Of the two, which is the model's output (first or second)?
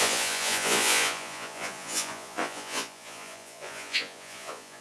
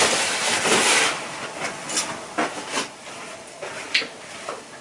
first